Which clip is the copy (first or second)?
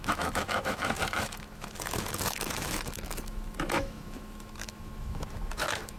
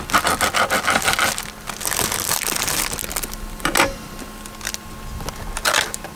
first